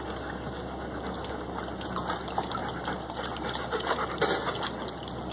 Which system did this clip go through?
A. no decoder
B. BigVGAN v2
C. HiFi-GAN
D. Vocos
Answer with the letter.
A